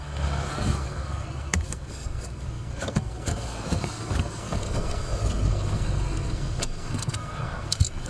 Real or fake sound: fake